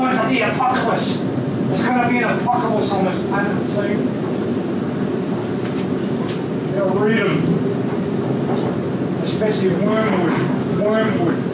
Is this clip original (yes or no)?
yes